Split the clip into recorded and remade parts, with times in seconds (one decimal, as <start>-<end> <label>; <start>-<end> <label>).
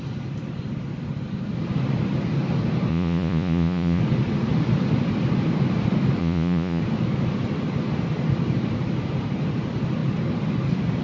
0.0-2.9 recorded; 2.9-4.0 remade; 4.0-6.2 recorded; 6.2-6.8 remade; 6.8-11.0 recorded